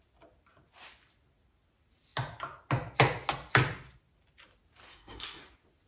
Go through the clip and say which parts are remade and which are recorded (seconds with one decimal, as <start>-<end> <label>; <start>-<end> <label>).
0.0-4.9 recorded; 4.9-5.4 remade; 5.4-5.9 recorded